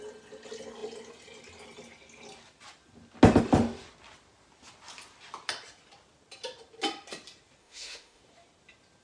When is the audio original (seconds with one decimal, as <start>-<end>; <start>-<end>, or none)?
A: 0.0-7.6; 8.2-9.0